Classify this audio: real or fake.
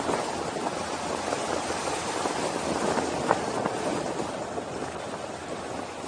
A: real